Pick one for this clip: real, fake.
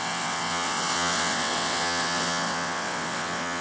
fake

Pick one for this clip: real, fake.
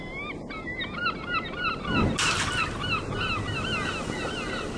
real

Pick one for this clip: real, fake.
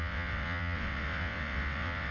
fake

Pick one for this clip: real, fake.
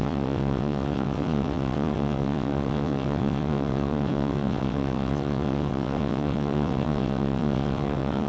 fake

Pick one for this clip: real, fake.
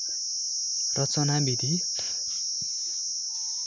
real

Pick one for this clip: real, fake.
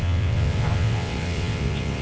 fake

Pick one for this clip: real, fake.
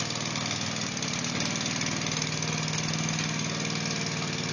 real